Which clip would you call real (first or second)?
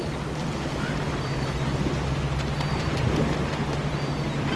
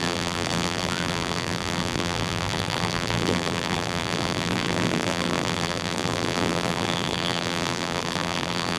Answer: first